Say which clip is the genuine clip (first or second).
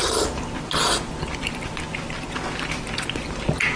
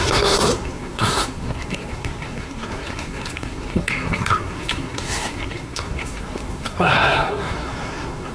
first